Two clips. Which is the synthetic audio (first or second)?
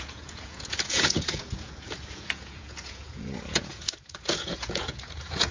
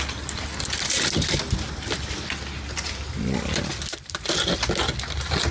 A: first